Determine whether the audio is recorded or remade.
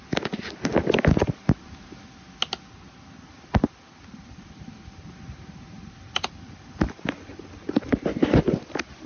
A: recorded